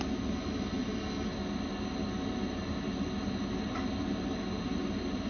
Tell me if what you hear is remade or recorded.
recorded